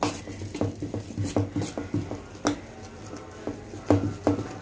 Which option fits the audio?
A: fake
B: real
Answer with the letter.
B